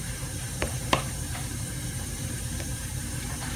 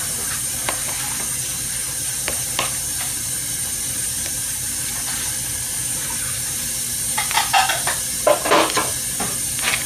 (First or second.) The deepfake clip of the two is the first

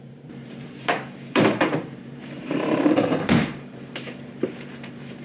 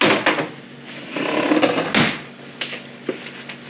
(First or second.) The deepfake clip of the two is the first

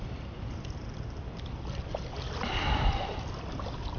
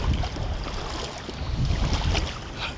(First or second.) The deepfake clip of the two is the first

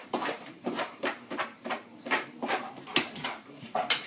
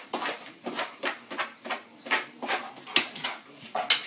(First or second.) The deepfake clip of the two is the first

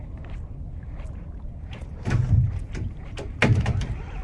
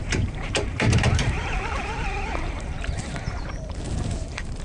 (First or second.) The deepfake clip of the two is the second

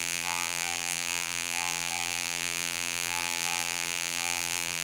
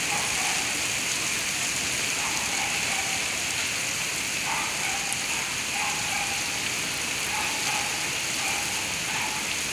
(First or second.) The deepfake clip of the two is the first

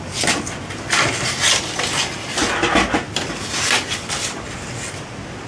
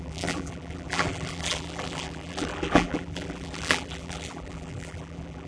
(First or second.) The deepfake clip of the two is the second